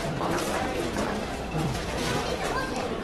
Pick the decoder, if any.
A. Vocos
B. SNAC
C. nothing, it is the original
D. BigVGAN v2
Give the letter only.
D